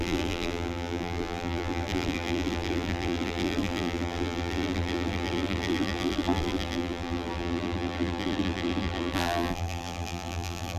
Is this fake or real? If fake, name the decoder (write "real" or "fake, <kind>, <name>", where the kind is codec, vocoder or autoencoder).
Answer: fake, vocoder, BigVGAN v2